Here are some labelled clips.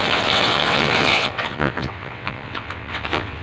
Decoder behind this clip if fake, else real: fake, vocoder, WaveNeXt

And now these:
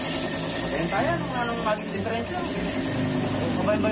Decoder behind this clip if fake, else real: real